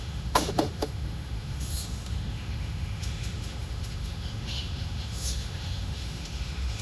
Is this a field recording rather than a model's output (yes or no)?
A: no